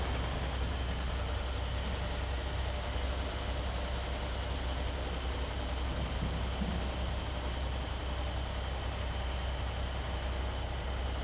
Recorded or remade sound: recorded